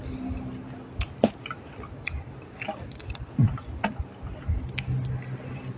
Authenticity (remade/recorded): recorded